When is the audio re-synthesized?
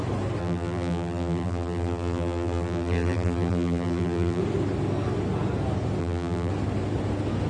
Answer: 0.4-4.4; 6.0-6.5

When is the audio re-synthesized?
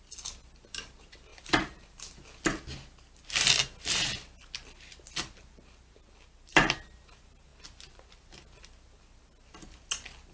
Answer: 1.3-2.0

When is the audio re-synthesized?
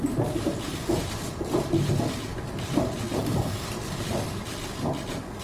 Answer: 0.0-5.4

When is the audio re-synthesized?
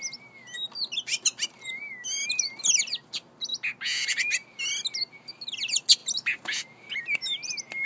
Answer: none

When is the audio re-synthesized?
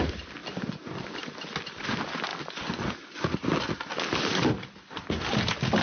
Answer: 0.0-2.3; 3.9-5.8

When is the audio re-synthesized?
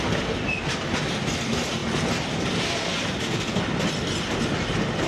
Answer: none